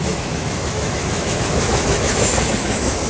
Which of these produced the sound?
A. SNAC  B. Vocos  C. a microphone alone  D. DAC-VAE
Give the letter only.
D